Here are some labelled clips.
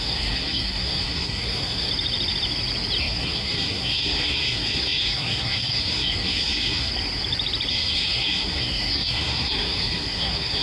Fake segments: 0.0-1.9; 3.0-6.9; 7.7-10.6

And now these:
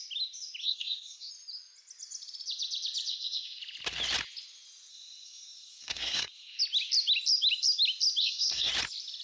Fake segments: 0.6-1.3; 3.1-3.6; 4.9-6.6; 8.2-8.7

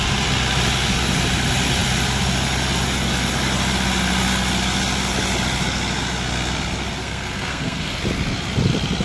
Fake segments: 7.0-8.0

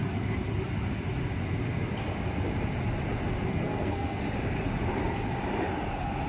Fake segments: 3.5-4.2

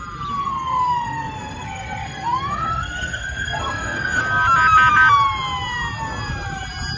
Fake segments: 0.4-4.2

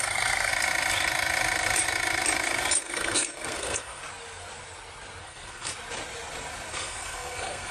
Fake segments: 0.0-0.5; 2.8-4.0; 5.2-5.7; 6.7-7.7